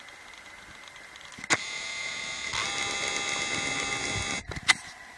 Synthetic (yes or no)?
no